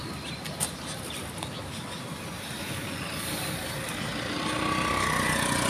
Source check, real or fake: real